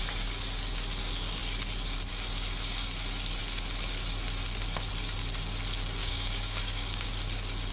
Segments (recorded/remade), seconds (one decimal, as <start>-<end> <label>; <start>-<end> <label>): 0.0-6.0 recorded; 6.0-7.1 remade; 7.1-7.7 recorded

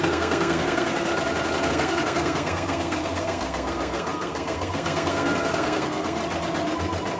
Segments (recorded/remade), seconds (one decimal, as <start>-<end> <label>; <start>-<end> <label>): 0.0-1.1 remade; 1.1-1.7 recorded; 1.7-6.2 remade; 6.2-7.2 recorded

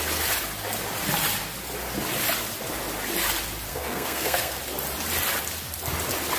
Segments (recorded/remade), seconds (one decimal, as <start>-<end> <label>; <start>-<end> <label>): 0.0-3.7 recorded; 3.7-4.6 remade; 4.6-6.4 recorded

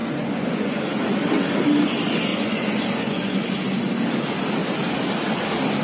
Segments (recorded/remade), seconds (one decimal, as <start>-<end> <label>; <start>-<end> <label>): 0.0-0.8 remade; 0.8-2.3 recorded; 2.3-3.4 remade; 3.4-5.8 recorded